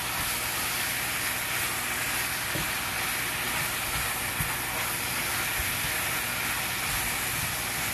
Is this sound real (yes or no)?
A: yes